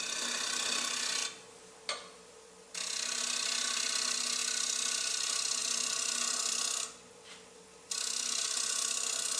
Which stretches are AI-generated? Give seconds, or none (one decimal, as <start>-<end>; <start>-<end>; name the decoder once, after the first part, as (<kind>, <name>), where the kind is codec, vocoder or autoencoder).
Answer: none